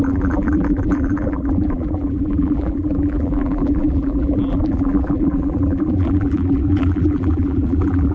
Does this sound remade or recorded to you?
remade